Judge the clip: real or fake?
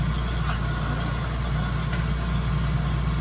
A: real